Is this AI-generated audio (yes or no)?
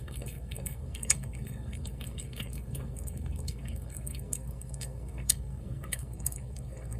yes